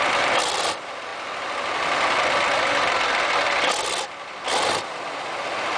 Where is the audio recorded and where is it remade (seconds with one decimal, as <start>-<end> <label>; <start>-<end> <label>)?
0.0-5.8 recorded